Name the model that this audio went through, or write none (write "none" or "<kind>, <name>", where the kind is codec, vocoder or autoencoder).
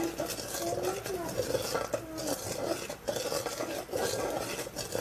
none